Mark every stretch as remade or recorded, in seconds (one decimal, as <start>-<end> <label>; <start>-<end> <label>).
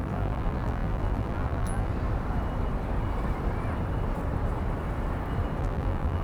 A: 0.0-1.9 remade; 1.9-5.6 recorded; 5.6-6.2 remade